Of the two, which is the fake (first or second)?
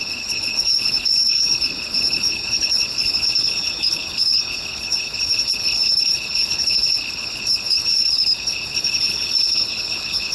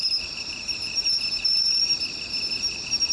first